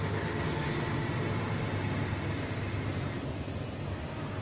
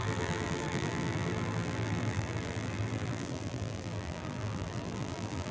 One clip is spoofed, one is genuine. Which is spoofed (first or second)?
second